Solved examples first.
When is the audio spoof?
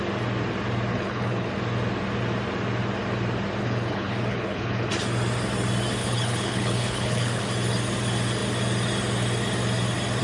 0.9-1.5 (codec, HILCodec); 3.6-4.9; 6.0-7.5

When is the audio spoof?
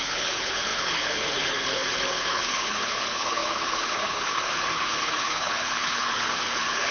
0.0-6.9 (codec, HILCodec)